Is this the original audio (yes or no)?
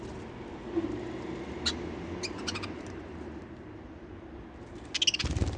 yes